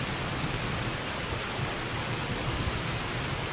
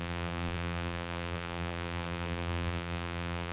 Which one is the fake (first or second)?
second